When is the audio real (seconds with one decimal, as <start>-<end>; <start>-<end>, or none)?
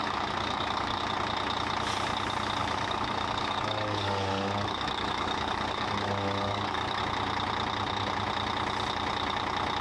1.0-2.6; 7.0-9.8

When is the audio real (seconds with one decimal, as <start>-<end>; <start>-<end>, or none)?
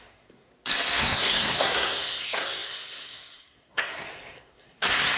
0.5-1.0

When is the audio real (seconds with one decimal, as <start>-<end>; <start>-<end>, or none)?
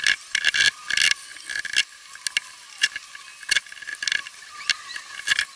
0.0-5.6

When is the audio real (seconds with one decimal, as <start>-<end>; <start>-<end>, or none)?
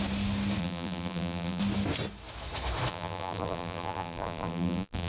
0.0-0.6; 1.6-2.9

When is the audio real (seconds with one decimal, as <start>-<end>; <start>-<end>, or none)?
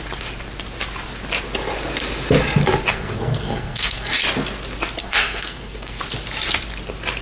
0.0-2.9; 4.1-5.0; 6.0-7.2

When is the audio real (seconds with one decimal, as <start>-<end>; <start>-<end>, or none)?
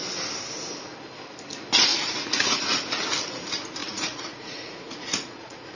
0.0-1.9; 2.6-3.8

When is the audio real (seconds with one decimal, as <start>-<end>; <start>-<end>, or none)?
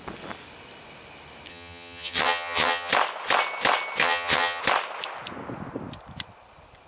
0.0-1.5; 2.9-4.0; 4.6-6.9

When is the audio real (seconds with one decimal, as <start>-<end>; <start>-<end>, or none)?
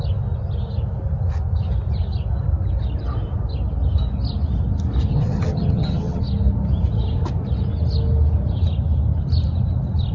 0.0-5.1; 6.2-10.1